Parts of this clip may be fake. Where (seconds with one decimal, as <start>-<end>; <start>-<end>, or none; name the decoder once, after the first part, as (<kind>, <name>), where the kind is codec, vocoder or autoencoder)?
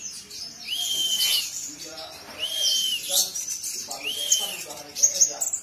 none